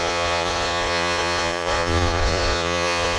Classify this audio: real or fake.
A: fake